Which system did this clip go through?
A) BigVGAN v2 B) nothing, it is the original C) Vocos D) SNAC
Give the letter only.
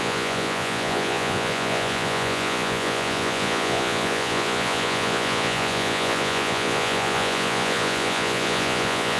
C